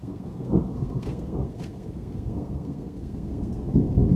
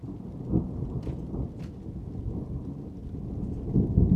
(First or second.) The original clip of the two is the second